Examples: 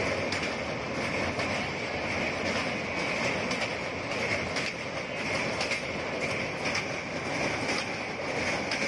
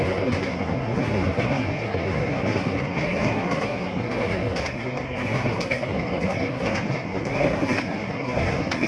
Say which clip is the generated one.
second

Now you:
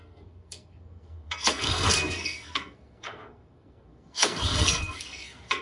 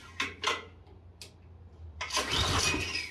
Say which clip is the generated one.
first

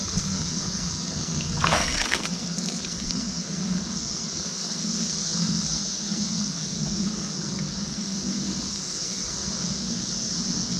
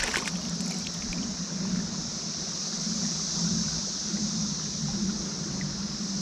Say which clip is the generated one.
first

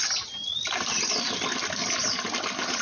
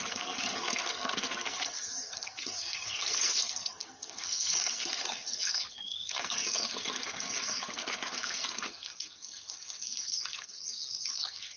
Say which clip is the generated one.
second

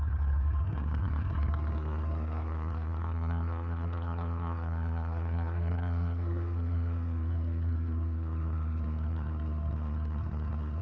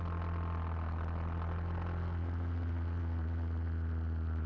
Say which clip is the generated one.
first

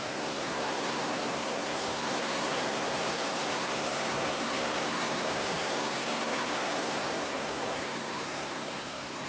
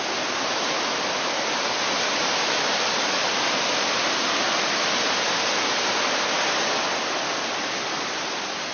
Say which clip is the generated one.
first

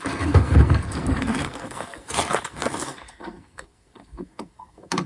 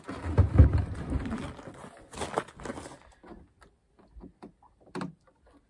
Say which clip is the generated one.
first